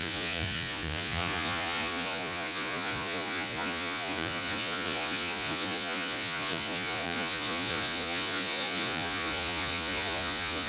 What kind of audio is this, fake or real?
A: fake